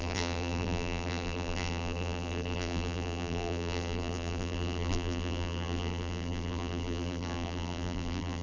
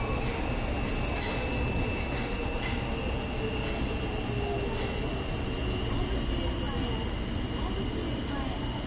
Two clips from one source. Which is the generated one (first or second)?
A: first